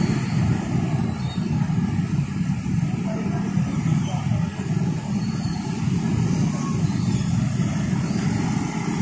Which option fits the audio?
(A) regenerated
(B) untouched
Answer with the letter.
B